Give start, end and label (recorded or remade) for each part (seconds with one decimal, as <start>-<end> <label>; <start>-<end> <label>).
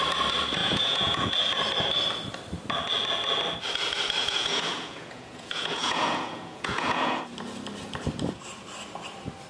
0.0-0.6 recorded; 0.6-1.3 remade; 1.3-4.2 recorded; 4.2-7.2 remade; 7.2-9.5 recorded